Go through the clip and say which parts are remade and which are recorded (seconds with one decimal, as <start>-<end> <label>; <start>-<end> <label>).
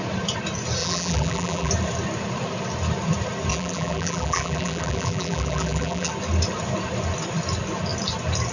0.0-0.8 recorded; 0.8-1.7 remade; 1.7-3.5 recorded; 3.5-6.1 remade; 6.1-8.5 recorded